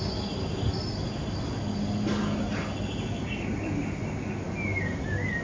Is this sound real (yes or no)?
yes